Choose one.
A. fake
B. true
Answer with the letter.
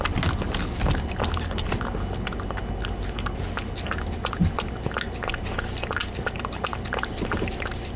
B